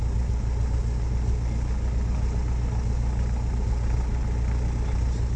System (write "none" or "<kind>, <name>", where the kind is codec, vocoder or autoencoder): none